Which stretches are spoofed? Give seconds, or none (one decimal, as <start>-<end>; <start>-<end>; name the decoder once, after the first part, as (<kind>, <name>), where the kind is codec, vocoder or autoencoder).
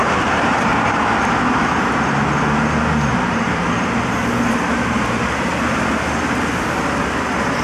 0.0-0.7 (vocoder, BigVGAN v2); 3.1-5.5; 6.5-7.6